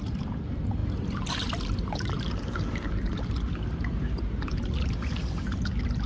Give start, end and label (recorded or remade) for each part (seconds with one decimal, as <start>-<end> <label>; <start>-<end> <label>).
0.0-6.1 recorded